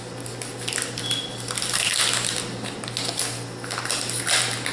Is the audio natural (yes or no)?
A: yes